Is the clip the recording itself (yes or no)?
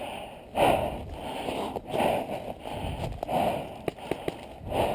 yes